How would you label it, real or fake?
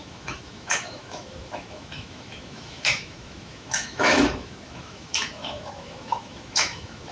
fake